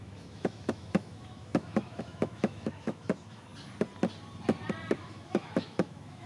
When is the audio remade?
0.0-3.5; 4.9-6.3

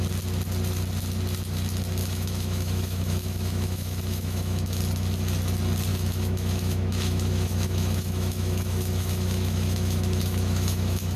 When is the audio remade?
2.0-4.8; 5.9-11.2

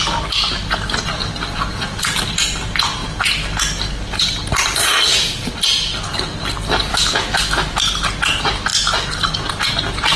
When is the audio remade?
6.9-7.8

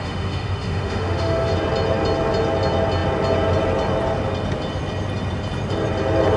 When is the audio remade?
0.0-1.5

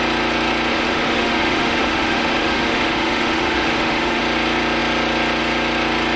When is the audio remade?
0.7-4.2